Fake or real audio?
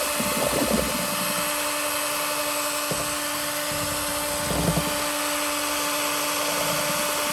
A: real